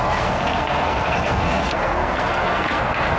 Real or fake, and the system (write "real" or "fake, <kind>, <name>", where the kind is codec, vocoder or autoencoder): fake, codec, SNAC